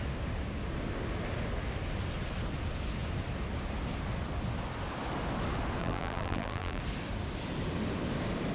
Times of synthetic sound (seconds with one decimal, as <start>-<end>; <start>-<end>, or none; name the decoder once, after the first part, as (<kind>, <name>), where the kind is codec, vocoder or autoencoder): 5.8-6.8 (vocoder, BigVGAN v2)